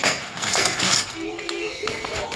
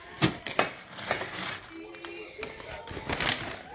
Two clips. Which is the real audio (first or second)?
second